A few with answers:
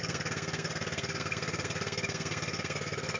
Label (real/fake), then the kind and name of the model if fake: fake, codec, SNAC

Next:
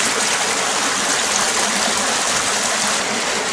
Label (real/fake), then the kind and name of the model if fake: real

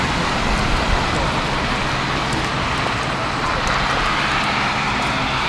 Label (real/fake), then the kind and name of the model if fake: real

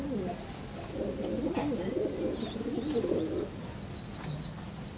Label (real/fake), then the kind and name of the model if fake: real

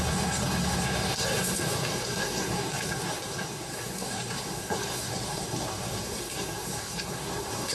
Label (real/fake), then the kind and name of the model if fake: fake, codec, SNAC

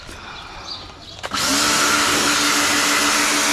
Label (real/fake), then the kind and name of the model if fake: real